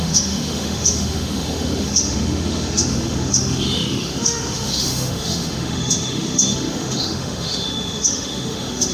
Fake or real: fake